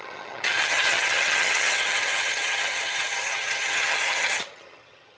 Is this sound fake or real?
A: fake